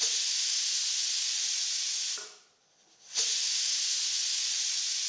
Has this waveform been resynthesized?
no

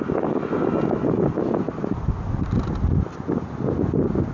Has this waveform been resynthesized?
no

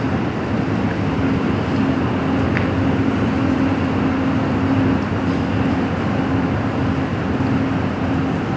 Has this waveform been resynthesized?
no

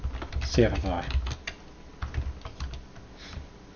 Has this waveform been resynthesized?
no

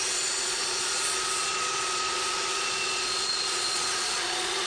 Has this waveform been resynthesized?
yes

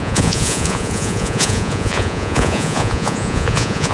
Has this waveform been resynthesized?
yes